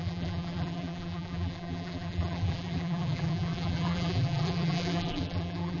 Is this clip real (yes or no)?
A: no